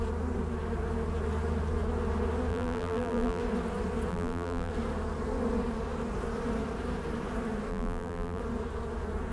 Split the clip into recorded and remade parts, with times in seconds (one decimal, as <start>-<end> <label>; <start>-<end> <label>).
0.0-2.5 recorded; 2.5-3.4 remade; 3.4-4.1 recorded; 4.1-4.7 remade; 4.7-7.7 recorded; 7.7-8.4 remade; 8.4-9.3 recorded